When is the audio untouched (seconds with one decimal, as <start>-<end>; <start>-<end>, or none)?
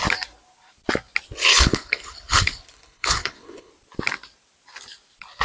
0.0-1.5; 3.7-5.4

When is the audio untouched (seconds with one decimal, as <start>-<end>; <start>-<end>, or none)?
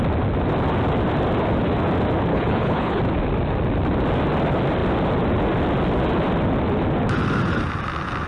0.0-2.3; 3.0-8.3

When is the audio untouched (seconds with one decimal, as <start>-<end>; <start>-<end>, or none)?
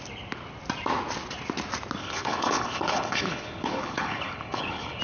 0.0-2.0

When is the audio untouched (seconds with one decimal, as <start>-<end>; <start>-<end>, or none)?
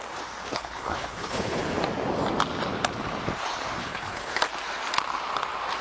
0.0-0.4; 1.6-3.8; 4.4-5.8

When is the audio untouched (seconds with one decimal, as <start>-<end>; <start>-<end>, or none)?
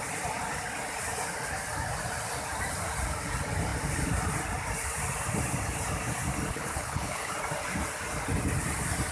0.0-6.5; 7.3-9.1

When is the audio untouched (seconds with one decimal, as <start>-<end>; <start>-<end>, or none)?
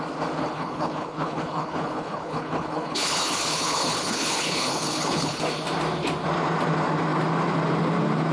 0.0-0.4; 5.4-8.3